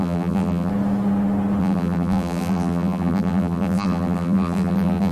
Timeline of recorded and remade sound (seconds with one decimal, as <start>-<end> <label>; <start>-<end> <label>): 0.0-0.7 remade; 0.7-1.6 recorded; 1.6-5.1 remade